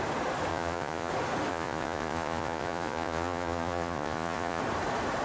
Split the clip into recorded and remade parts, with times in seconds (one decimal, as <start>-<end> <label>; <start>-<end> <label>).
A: 0.0-0.5 recorded; 0.5-1.1 remade; 1.1-1.5 recorded; 1.5-4.6 remade; 4.6-5.2 recorded